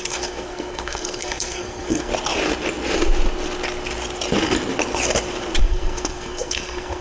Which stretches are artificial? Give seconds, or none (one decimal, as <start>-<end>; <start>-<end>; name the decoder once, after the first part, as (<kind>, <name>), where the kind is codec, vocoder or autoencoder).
0.0-2.1 (codec, SNAC); 5.6-7.0